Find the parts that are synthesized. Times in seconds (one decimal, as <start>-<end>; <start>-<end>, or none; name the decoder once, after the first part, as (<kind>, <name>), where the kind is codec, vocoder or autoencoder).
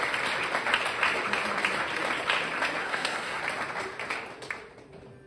2.8-3.4 (codec, SNAC)